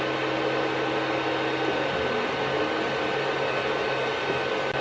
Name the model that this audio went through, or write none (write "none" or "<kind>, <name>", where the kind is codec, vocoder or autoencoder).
none